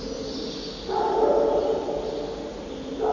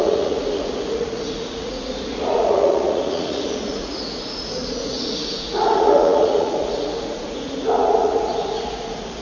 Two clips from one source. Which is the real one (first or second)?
first